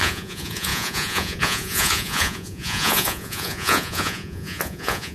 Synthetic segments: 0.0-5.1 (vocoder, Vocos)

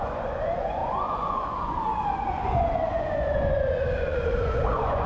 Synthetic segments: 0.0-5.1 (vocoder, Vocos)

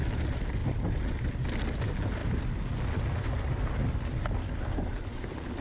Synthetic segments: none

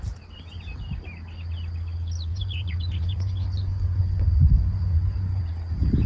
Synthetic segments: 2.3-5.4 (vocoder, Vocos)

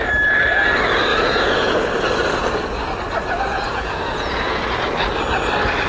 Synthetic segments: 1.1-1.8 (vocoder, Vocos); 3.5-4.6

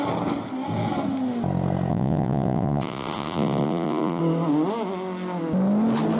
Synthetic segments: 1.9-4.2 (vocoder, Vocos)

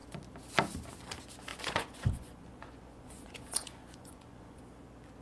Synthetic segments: 1.5-4.6 (vocoder, Vocos)